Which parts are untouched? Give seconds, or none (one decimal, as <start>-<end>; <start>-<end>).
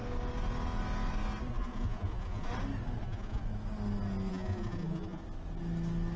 0.0-1.5; 2.5-3.0; 3.4-4.3; 5.2-6.2